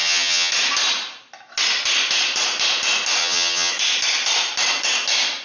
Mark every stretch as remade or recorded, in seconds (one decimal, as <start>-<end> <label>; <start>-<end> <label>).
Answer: 0.0-0.5 remade; 0.5-3.2 recorded; 3.2-3.7 remade; 3.7-5.4 recorded